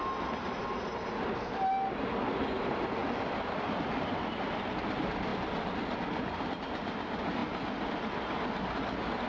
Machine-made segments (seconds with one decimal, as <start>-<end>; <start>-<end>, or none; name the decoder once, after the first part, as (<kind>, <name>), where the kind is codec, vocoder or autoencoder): none